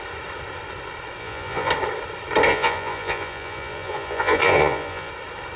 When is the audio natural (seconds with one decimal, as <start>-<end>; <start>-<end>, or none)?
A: 0.0-1.2; 1.7-2.5; 5.1-5.6